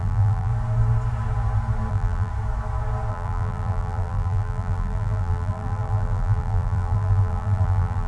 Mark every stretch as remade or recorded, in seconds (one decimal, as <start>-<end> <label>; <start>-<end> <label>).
0.0-0.5 remade; 0.5-1.9 recorded; 1.9-2.3 remade; 2.3-3.1 recorded; 3.1-8.1 remade